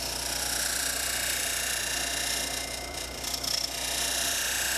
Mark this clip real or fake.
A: fake